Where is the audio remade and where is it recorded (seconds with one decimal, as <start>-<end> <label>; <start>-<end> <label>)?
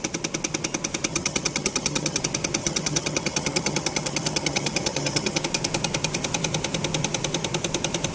0.0-1.1 recorded; 1.1-2.2 remade; 2.2-2.6 recorded; 2.6-5.4 remade; 5.4-8.1 recorded